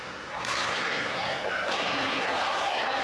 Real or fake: fake